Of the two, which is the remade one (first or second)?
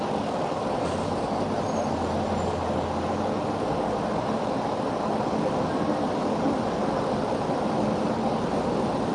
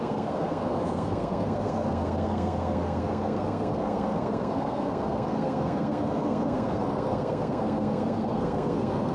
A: second